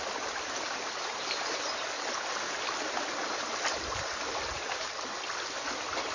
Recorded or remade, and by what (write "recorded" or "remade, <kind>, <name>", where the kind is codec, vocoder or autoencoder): recorded